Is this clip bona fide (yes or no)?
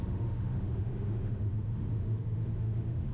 no